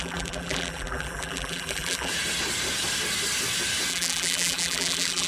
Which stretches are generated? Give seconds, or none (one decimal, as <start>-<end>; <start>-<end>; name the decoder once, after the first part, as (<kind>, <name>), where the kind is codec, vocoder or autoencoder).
0.0-2.1 (vocoder, BigVGAN v2); 3.9-5.3